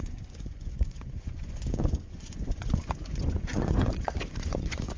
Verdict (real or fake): fake